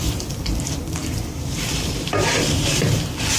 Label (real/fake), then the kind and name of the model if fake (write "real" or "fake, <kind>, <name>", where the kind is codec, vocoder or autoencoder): fake, vocoder, BigVGAN v2